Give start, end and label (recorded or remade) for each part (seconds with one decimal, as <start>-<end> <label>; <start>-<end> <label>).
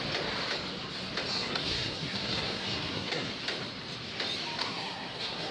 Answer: 0.0-1.3 recorded; 1.3-3.3 remade; 3.3-4.6 recorded; 4.6-5.5 remade